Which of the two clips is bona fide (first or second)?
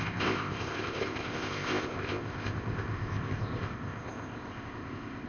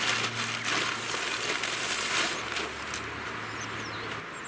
second